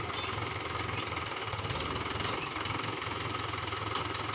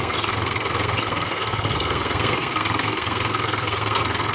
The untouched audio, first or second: first